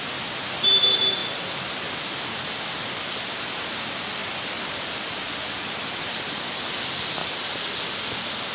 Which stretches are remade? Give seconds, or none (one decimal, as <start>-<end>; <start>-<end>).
none